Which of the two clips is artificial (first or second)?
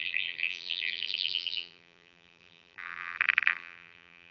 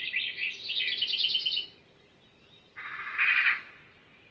first